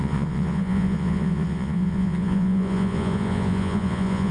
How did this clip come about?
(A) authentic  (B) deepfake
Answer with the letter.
B